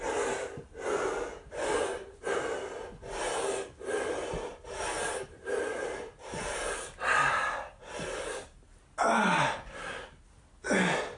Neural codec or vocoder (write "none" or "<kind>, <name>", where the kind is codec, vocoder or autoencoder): none